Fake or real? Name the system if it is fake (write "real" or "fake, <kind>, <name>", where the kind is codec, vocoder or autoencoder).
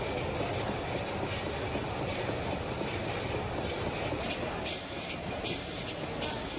real